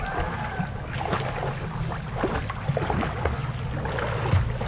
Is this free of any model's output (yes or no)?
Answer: yes